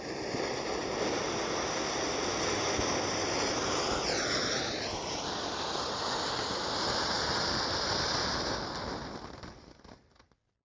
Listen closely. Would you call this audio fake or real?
real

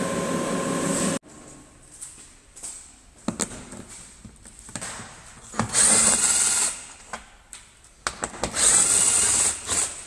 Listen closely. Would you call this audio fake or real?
real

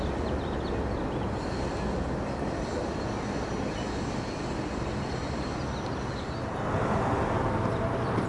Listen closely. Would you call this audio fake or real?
real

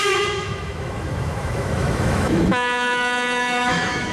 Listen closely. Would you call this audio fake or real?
fake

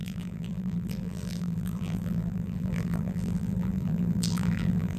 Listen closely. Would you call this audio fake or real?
fake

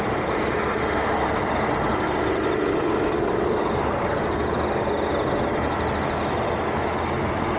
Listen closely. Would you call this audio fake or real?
real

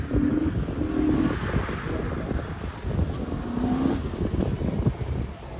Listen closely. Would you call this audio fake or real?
real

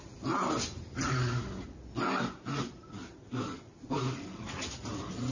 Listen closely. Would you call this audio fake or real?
real